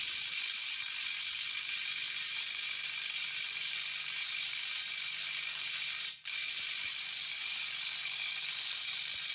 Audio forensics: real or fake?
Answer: fake